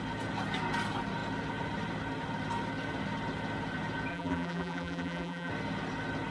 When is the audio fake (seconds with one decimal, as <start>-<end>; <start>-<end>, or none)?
4.1-5.5